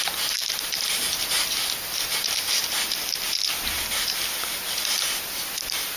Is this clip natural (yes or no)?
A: yes